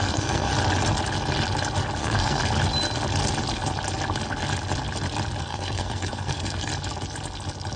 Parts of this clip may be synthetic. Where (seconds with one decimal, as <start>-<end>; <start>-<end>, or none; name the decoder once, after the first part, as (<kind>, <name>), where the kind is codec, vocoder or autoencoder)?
0.0-0.5 (codec, SNAC); 2.0-2.4; 5.4-6.7